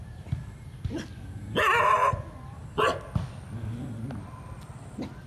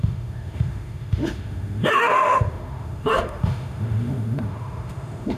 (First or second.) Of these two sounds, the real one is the first